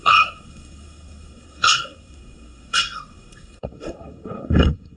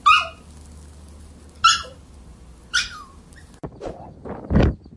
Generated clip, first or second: first